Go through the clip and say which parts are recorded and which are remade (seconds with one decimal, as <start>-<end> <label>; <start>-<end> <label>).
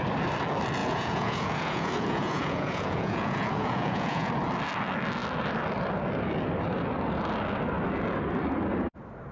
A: 0.0-0.8 recorded; 0.8-4.3 remade; 4.3-9.3 recorded